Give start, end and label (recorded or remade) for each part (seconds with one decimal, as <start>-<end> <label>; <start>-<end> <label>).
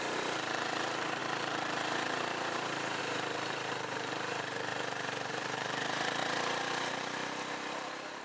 0.0-4.7 remade; 4.7-5.3 recorded; 5.3-6.2 remade; 6.2-6.9 recorded; 6.9-8.2 remade